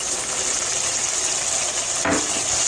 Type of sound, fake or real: real